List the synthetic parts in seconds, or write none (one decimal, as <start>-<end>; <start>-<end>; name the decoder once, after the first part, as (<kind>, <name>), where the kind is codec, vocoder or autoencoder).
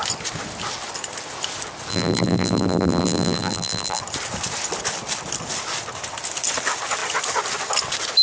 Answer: 1.9-4.0 (vocoder, BigVGAN v2)